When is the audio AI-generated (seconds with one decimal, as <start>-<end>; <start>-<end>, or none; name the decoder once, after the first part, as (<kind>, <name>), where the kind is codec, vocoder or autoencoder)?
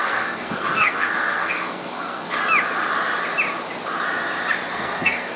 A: 0.0-2.4 (codec, SNAC); 4.7-5.4